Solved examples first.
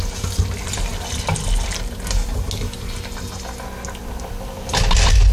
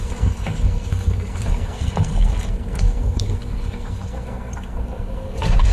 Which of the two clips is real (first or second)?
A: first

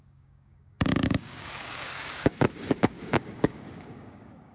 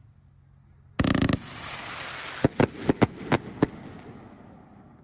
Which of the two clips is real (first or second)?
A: second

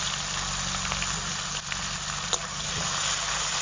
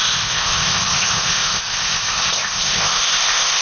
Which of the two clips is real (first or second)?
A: first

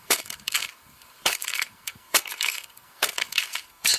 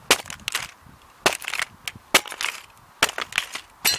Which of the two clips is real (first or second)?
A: second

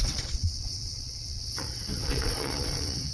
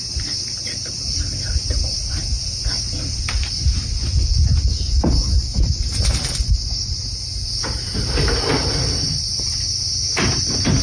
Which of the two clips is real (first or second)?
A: second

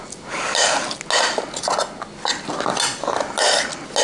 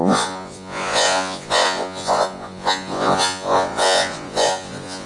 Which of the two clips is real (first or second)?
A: first